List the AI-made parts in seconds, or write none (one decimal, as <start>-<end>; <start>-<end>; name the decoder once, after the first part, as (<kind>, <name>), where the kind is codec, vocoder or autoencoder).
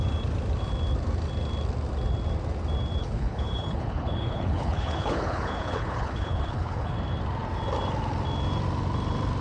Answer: 3.0-6.9 (codec, HILCodec)